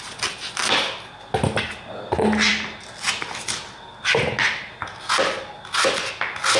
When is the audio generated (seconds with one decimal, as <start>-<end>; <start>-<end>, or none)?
none